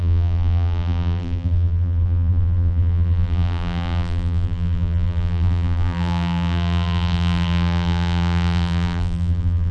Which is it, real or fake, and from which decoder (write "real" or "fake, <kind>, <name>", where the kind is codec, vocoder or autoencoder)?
fake, vocoder, BigVGAN v2